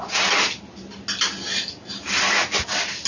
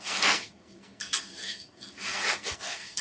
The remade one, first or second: second